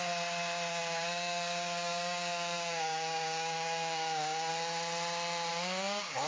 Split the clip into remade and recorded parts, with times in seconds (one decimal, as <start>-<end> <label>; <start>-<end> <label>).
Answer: 0.0-0.7 recorded; 0.7-4.5 remade; 4.5-5.5 recorded; 5.5-6.3 remade